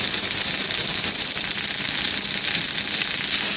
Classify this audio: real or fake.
real